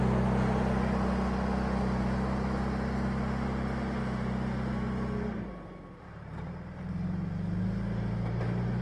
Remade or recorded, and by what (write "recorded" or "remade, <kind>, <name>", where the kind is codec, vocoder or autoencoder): recorded